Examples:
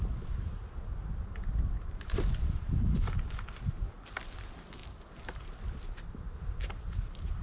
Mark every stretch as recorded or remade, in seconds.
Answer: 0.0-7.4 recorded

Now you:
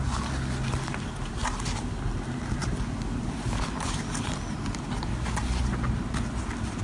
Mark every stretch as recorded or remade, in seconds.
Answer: 0.0-2.6 recorded; 2.6-4.0 remade; 4.0-6.8 recorded

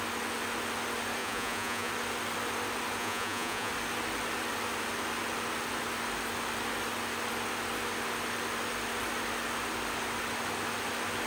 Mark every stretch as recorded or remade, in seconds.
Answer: 0.0-1.2 recorded; 1.2-1.9 remade; 1.9-3.0 recorded; 3.0-3.7 remade; 3.7-11.3 recorded

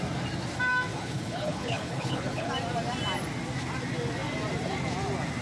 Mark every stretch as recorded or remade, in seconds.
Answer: 0.0-0.9 recorded; 0.9-2.5 remade; 2.5-5.4 recorded

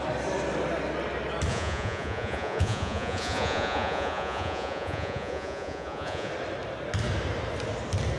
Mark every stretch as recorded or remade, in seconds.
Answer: 0.0-1.5 recorded; 1.5-6.3 remade; 6.3-8.2 recorded